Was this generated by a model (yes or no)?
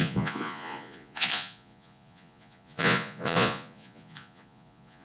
yes